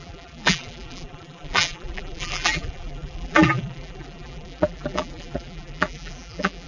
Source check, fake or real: fake